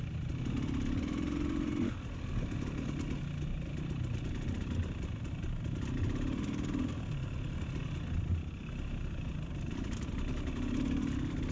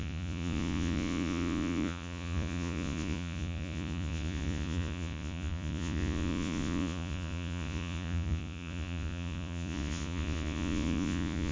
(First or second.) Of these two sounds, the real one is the first